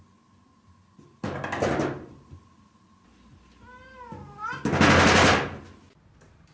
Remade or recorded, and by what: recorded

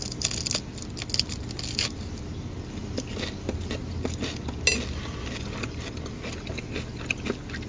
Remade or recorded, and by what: recorded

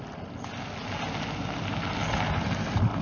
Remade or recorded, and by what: recorded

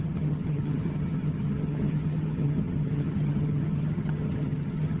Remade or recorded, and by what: remade, vocoder, HiFi-GAN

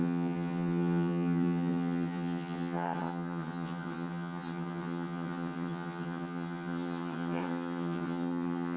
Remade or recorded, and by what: remade, vocoder, HiFi-GAN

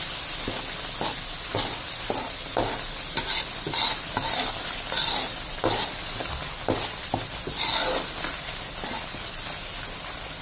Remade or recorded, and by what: recorded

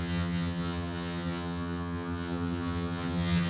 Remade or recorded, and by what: remade, vocoder, HiFi-GAN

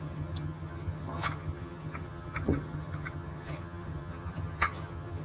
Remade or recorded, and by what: remade, vocoder, HiFi-GAN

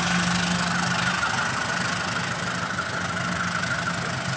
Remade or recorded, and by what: recorded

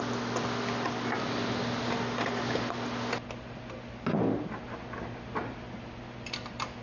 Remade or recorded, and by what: recorded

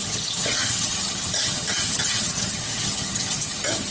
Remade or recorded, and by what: remade, vocoder, HiFi-GAN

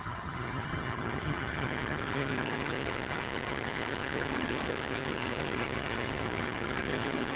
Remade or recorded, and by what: remade, vocoder, HiFi-GAN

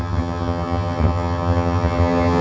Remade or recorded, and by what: remade, vocoder, HiFi-GAN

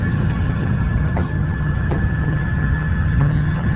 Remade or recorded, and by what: remade, vocoder, HiFi-GAN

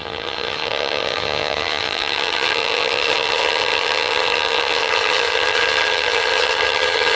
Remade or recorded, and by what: remade, vocoder, HiFi-GAN